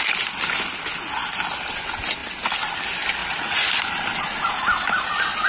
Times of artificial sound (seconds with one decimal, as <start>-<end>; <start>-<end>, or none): 3.2-3.7